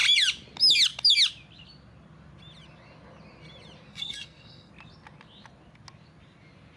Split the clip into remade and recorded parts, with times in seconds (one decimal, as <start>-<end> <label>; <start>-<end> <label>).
0.0-3.9 recorded; 3.9-4.7 remade; 4.7-6.8 recorded